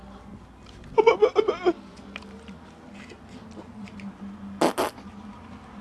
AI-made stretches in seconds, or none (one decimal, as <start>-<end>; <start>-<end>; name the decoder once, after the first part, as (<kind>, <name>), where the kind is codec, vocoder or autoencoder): none